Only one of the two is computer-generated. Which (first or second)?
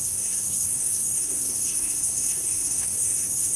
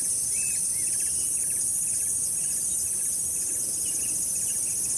first